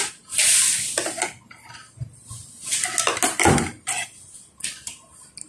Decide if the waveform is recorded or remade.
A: recorded